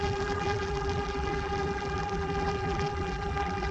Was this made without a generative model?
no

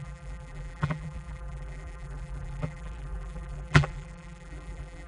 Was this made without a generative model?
no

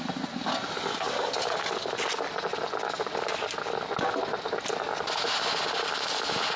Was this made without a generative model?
yes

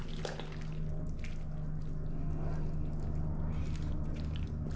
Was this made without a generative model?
yes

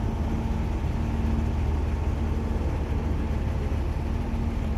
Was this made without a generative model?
yes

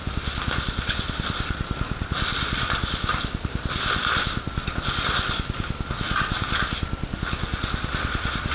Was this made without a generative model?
no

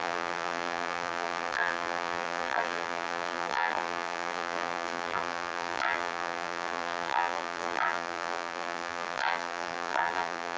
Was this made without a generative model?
no